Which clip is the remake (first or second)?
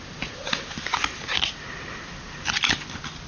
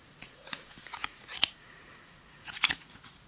second